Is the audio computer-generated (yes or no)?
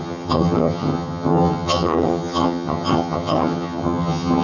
yes